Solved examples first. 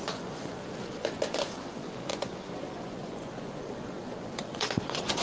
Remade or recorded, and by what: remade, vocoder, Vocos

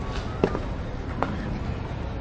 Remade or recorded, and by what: recorded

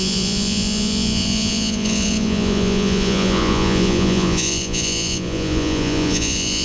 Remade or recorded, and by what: remade, vocoder, Vocos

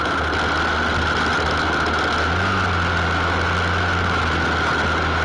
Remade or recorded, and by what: recorded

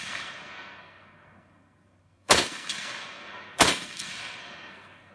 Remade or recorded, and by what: remade, codec, SNAC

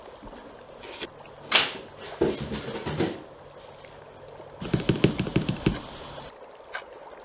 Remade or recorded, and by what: recorded